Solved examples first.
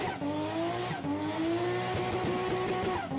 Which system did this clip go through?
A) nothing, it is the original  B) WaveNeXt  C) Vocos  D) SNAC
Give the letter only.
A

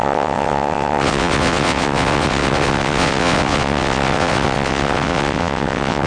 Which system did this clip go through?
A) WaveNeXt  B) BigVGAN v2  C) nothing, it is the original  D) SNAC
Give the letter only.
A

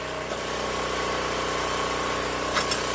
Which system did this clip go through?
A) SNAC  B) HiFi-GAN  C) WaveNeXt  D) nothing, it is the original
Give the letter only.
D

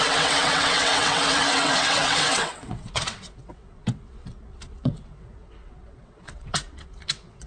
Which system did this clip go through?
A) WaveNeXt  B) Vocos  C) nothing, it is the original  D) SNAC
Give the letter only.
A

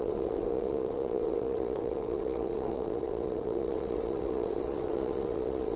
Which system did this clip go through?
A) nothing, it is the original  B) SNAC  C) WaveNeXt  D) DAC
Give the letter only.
C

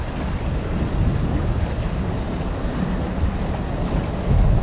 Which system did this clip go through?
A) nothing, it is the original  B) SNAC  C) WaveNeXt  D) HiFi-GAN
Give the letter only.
A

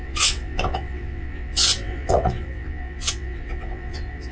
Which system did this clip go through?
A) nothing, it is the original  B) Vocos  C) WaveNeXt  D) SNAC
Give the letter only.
C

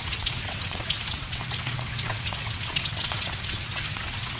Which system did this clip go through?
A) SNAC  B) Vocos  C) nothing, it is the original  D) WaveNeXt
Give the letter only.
D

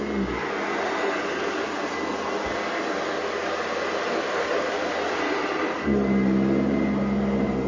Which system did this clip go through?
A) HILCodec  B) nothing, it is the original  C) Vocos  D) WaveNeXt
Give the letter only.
B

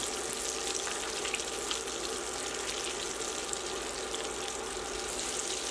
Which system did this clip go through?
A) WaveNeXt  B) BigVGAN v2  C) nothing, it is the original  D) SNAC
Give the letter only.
C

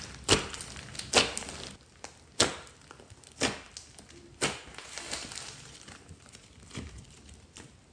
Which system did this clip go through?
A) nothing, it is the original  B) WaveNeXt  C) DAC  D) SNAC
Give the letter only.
A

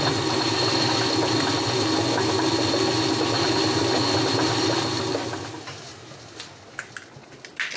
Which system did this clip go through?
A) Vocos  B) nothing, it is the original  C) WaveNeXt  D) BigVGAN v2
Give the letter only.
B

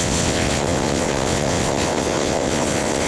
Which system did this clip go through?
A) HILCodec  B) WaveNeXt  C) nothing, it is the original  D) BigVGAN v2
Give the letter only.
B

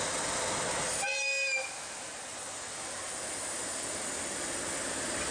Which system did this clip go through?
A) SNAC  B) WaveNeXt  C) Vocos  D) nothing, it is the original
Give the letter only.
D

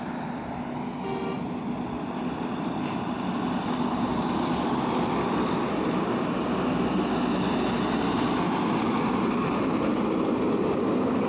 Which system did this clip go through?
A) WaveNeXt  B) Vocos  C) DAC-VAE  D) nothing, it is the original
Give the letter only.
D